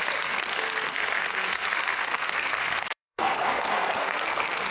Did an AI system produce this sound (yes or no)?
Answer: yes